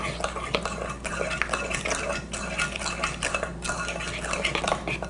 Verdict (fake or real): real